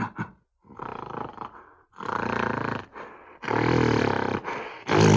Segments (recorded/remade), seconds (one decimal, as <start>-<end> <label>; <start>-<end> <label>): 0.0-5.2 recorded